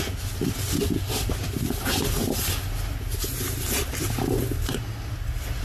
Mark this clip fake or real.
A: real